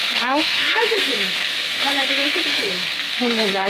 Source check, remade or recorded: remade